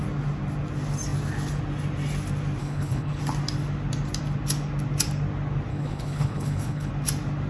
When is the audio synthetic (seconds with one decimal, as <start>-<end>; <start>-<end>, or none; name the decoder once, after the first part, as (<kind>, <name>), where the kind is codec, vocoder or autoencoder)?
2.6-3.2 (codec, HILCodec); 5.7-6.9